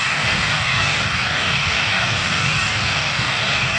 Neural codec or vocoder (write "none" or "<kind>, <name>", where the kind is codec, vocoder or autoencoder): codec, DAC